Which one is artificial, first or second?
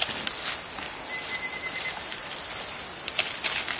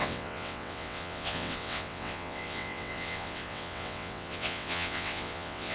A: second